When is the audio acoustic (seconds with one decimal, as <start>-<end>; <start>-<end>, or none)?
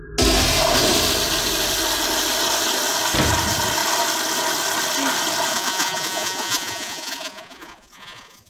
0.0-5.5